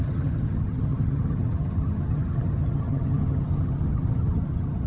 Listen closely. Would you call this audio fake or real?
fake